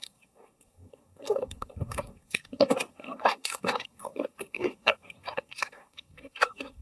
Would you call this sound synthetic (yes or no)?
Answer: yes